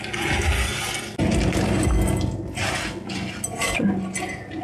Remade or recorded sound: recorded